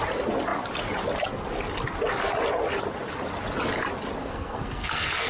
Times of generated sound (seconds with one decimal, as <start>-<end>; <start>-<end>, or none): 4.2-5.3